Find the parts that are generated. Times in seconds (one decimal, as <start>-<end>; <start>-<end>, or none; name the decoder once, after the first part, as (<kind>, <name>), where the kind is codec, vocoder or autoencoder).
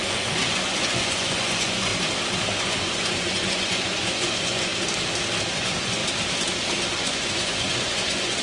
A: 0.0-1.9 (vocoder, Vocos); 2.6-4.7; 5.5-6.0; 7.0-8.4